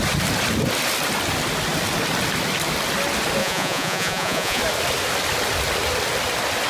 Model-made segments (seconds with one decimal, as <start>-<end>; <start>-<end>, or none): 3.4-4.6